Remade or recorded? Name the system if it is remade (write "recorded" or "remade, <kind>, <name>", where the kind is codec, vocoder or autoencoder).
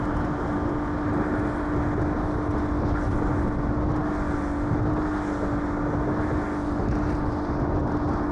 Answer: recorded